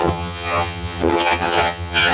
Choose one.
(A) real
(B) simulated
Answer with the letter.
B